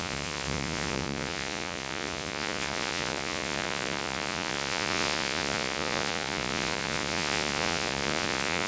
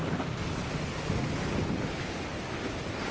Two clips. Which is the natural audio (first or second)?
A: second